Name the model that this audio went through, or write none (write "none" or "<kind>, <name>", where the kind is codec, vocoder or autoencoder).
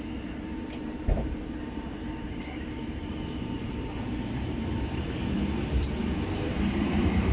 vocoder, BigVGAN v2